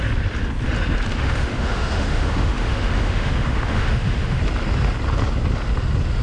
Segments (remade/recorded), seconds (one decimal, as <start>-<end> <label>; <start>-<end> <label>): 0.0-1.1 recorded; 1.1-4.4 remade; 4.4-6.2 recorded